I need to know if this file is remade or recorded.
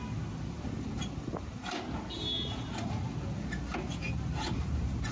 recorded